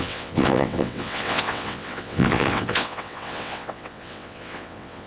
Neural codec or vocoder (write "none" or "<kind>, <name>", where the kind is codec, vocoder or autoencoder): vocoder, WaveNeXt